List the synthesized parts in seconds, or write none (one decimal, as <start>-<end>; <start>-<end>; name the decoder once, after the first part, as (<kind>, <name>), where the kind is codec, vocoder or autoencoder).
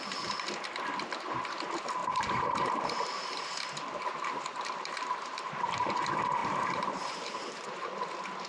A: 2.0-5.9 (vocoder, BigVGAN v2); 6.4-8.0